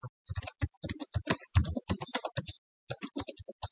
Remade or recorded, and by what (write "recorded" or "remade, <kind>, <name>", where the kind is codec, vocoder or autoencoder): recorded